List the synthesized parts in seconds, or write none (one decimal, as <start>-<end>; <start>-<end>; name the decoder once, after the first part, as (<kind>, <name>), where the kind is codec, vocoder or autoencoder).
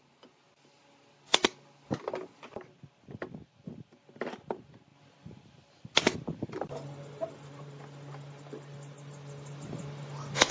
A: none